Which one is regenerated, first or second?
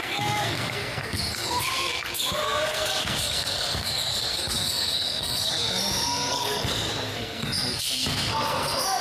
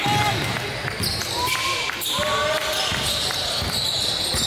first